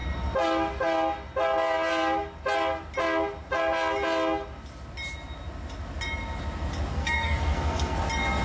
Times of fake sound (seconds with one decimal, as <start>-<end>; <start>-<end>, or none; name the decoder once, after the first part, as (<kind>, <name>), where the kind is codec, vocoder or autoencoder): 6.9-8.0 (codec, SNAC)